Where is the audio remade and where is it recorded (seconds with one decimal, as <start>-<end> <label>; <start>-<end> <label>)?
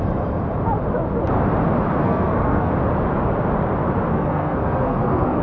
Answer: 0.0-2.0 recorded; 2.0-2.7 remade; 2.7-4.1 recorded; 4.1-5.4 remade